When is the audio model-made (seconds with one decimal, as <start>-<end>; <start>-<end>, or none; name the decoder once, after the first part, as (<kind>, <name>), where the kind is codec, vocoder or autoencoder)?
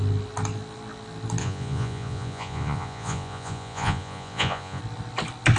1.4-4.8 (vocoder, Vocos)